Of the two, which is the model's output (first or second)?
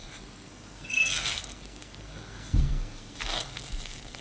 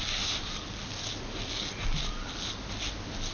first